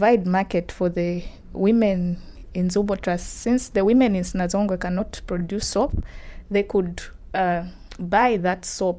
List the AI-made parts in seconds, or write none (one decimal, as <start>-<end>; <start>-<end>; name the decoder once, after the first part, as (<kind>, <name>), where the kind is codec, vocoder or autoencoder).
0.0-5.4 (vocoder, BigVGAN v2); 5.9-9.0